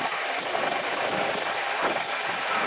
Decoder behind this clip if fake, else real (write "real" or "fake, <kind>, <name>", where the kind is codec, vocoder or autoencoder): real